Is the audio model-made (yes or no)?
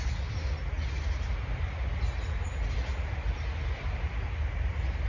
no